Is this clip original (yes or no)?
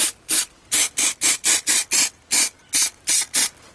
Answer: no